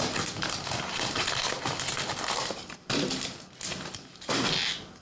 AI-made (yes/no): no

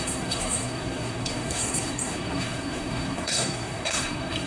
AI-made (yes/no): yes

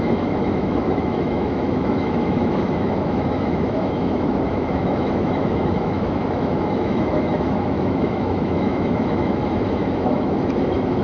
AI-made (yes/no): yes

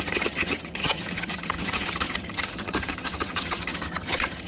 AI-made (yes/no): yes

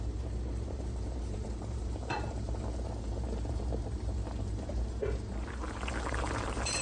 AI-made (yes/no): yes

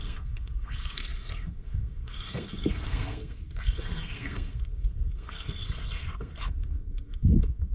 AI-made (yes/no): yes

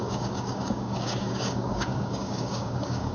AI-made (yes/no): yes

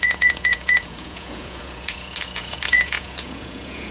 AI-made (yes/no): yes